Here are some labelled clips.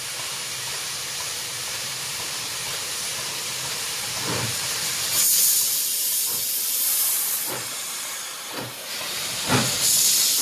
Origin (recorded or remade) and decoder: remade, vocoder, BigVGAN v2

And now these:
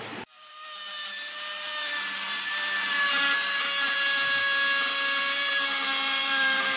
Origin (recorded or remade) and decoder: remade, vocoder, BigVGAN v2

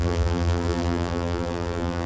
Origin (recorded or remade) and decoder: remade, vocoder, BigVGAN v2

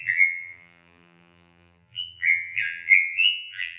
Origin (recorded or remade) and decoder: remade, vocoder, BigVGAN v2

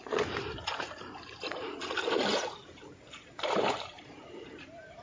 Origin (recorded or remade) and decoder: remade, vocoder, BigVGAN v2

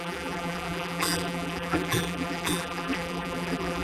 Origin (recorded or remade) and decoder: remade, vocoder, BigVGAN v2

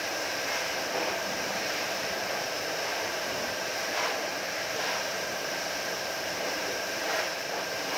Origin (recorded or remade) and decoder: remade, vocoder, BigVGAN v2